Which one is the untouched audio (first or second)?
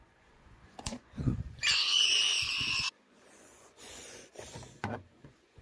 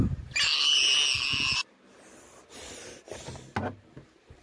second